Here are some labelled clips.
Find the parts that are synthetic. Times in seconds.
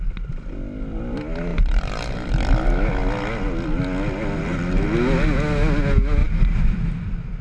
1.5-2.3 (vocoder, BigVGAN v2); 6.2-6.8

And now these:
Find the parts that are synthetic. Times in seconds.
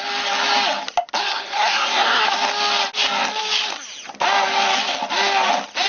1.2-2.3 (codec, SNAC)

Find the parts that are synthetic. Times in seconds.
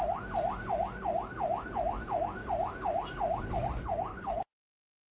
4.1-5.1 (codec, HILCodec)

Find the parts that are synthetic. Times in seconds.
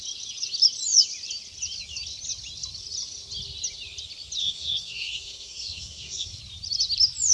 4.4-6.4 (codec, SNAC)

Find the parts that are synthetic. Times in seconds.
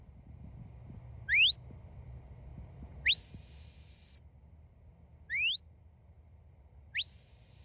none